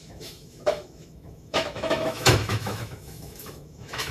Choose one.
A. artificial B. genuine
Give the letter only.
A